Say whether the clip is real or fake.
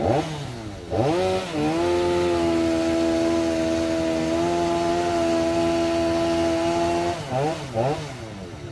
real